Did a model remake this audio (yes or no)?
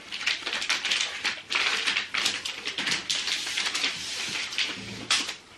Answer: yes